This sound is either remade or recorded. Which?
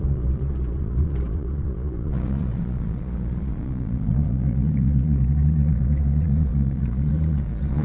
remade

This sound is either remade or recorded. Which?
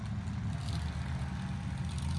recorded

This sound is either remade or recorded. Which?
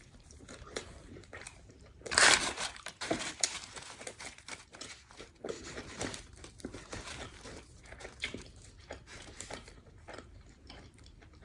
remade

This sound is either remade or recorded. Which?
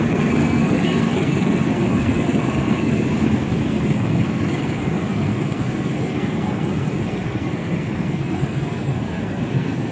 remade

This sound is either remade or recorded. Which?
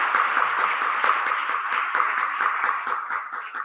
recorded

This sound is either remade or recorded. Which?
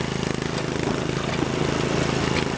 recorded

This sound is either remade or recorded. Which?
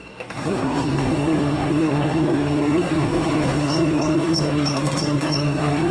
remade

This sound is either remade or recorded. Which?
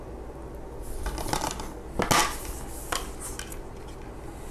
recorded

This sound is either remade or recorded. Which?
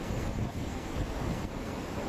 remade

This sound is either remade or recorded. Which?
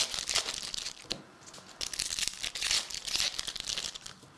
recorded